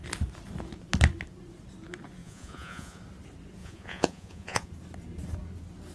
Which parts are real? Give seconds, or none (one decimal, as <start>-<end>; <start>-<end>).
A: 0.0-2.2; 3.0-3.6; 4.7-5.9